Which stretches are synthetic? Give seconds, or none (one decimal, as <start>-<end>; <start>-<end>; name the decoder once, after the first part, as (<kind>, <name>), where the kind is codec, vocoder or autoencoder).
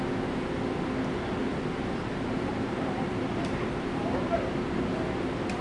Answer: 1.4-4.4 (vocoder, BigVGAN v2)